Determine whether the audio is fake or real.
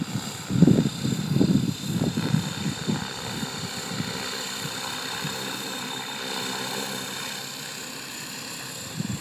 fake